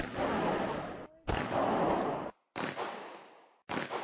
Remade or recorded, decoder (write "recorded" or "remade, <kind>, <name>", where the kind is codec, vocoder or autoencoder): recorded